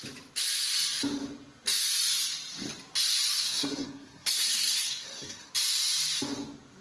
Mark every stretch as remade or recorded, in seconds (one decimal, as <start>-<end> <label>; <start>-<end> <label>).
0.0-3.3 recorded; 3.3-5.5 remade; 5.5-6.8 recorded